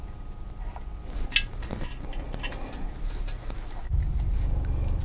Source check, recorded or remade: recorded